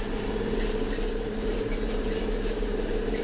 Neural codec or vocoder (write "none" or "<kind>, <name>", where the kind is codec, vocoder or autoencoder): vocoder, BigVGAN v2